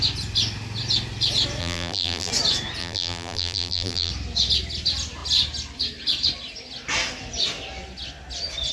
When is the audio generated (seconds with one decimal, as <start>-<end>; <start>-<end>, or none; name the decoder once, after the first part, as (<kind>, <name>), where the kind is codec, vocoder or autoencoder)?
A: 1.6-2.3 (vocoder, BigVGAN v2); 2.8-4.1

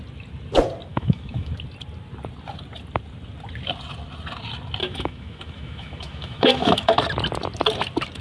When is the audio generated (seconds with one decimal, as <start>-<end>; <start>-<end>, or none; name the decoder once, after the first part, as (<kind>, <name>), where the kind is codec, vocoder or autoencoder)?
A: 0.9-1.5 (autoencoder, DAC-VAE); 4.8-7.0

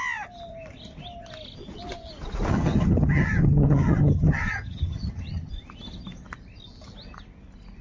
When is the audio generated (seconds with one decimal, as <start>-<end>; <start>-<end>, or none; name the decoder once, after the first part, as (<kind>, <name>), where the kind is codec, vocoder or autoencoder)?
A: 2.5-5.5 (vocoder, HiFi-GAN)

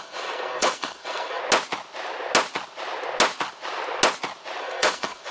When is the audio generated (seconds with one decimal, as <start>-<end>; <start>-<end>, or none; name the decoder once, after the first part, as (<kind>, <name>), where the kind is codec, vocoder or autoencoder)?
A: 0.0-1.4 (codec, SNAC); 4.6-5.3

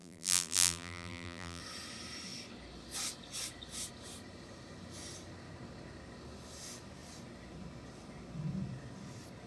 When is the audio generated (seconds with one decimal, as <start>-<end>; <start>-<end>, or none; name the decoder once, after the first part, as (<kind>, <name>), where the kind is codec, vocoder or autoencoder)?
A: 0.0-1.6 (vocoder, BigVGAN v2)